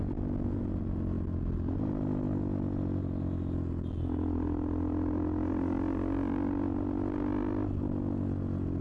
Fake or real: real